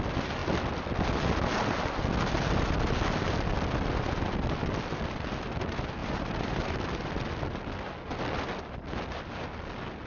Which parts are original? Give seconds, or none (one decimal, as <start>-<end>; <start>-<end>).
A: 0.0-6.0; 6.8-10.1